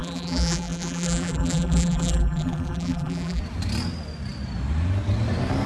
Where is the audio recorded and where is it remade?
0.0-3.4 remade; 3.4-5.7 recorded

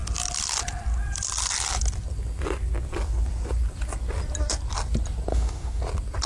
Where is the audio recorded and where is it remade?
0.0-5.3 recorded; 5.3-5.8 remade; 5.8-6.3 recorded

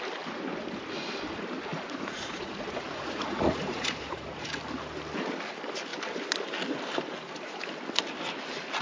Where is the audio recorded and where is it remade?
0.0-1.7 recorded; 1.7-4.5 remade; 4.5-8.8 recorded

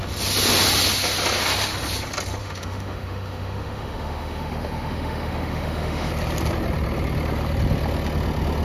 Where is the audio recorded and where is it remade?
0.0-2.4 recorded; 2.4-6.1 remade; 6.1-8.6 recorded

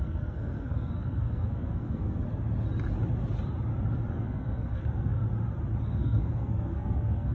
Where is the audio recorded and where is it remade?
0.0-2.2 remade; 2.2-4.1 recorded; 4.1-5.2 remade; 5.2-5.8 recorded; 5.8-7.3 remade

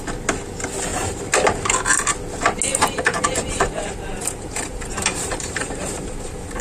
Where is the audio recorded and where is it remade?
0.0-2.7 recorded; 2.7-6.6 remade